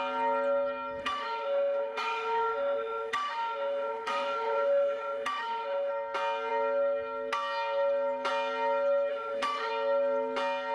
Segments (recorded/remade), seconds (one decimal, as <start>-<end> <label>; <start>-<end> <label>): 0.0-1.0 recorded; 1.0-5.9 remade; 5.9-9.1 recorded; 9.1-9.7 remade; 9.7-10.7 recorded